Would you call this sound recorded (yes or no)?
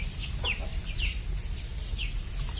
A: yes